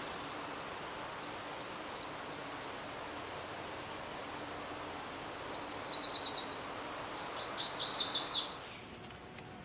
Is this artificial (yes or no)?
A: no